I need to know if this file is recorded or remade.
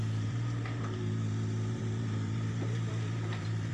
remade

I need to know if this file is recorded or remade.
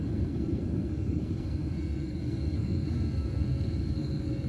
remade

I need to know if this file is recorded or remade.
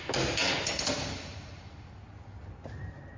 recorded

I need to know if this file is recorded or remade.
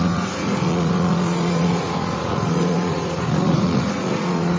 remade